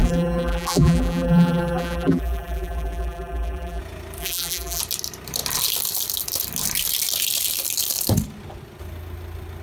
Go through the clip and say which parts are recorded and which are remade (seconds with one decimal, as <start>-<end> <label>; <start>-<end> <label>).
0.0-3.8 remade; 3.8-4.2 recorded; 4.2-4.8 remade; 4.8-9.6 recorded